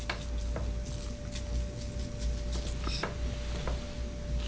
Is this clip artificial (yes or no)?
no